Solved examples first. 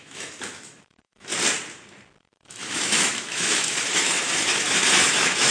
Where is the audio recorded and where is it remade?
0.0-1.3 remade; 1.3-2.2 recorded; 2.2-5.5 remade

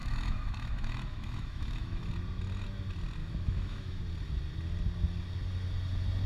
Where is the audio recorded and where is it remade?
0.0-2.1 remade; 2.1-3.2 recorded; 3.2-4.0 remade; 4.0-6.3 recorded

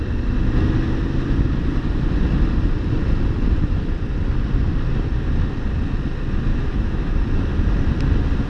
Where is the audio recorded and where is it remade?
0.0-6.5 recorded; 6.5-7.2 remade; 7.2-8.5 recorded

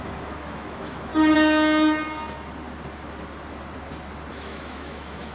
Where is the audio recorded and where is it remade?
0.0-1.1 remade; 1.1-4.3 recorded; 4.3-5.3 remade

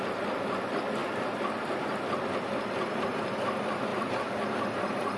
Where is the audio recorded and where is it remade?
0.0-5.2 recorded

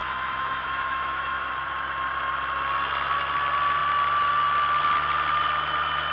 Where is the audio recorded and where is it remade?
0.0-1.5 remade; 1.5-6.1 recorded

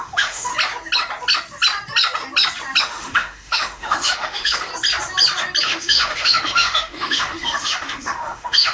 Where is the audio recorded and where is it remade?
0.0-0.5 remade; 0.5-2.8 recorded; 2.8-4.7 remade; 4.7-5.6 recorded; 5.6-8.7 remade